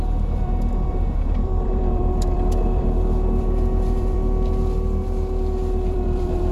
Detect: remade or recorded remade